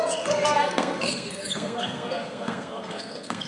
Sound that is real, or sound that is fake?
fake